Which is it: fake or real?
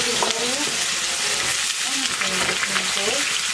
real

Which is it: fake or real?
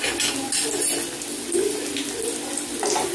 real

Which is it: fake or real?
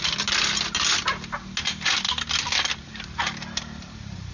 real